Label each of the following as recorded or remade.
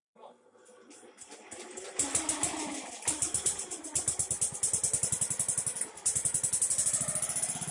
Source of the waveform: recorded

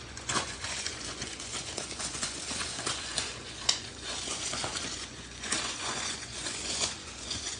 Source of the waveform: remade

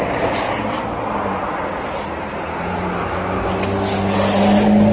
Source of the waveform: recorded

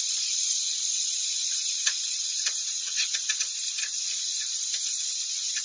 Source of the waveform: remade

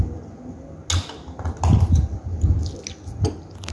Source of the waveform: recorded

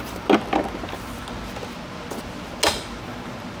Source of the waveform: recorded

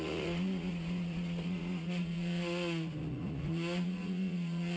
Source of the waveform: remade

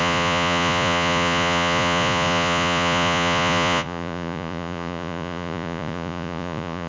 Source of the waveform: remade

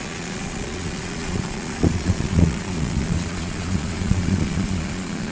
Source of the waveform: remade